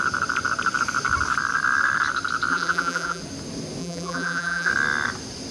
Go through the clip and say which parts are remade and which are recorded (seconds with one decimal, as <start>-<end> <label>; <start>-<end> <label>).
0.0-2.5 recorded; 2.5-3.2 remade; 3.2-3.8 recorded; 3.8-4.7 remade; 4.7-5.5 recorded